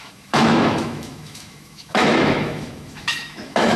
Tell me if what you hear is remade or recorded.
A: remade